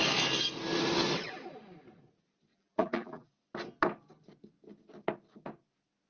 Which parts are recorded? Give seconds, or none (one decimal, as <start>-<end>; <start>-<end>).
0.0-2.5; 3.3-6.1